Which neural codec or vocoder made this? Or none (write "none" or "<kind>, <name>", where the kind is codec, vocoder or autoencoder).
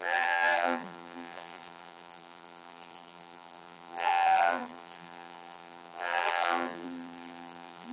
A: vocoder, BigVGAN v2